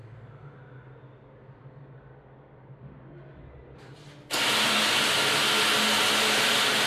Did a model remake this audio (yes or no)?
no